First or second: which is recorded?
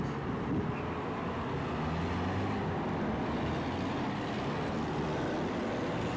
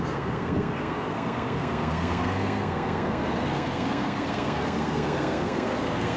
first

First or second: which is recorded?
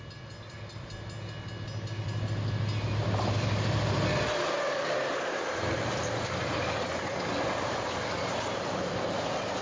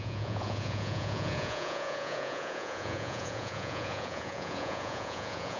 first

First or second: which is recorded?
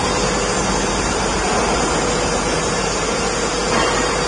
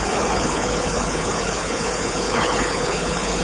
first